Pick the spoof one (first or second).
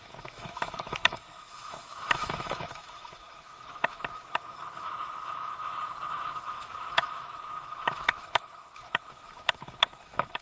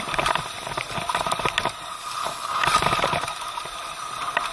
first